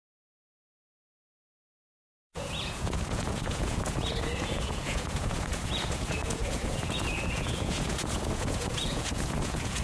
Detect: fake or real fake